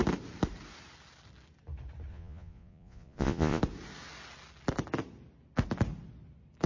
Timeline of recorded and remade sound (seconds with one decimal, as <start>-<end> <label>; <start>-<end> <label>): 0.0-2.1 recorded; 2.1-3.6 remade; 3.6-6.7 recorded